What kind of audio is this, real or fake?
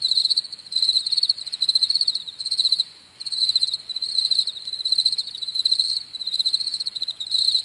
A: fake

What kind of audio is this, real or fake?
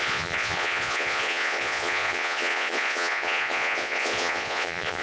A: fake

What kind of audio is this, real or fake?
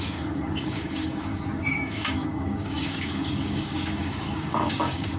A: fake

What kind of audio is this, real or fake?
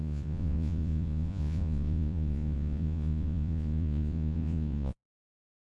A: fake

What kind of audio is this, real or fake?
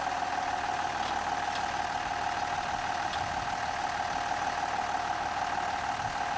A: real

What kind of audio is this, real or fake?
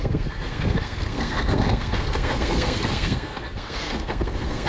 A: fake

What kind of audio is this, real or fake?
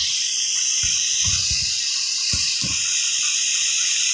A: real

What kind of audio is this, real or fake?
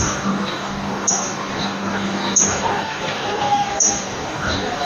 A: fake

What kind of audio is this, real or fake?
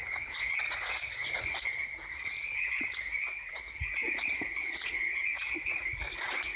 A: fake